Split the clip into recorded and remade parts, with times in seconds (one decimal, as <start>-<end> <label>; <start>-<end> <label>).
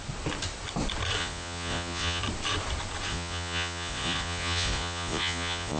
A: 0.0-1.2 recorded; 1.2-2.2 remade; 2.2-3.1 recorded; 3.1-5.8 remade